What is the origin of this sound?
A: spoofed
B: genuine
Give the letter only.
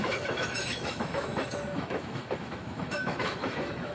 A